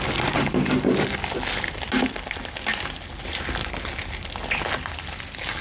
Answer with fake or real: real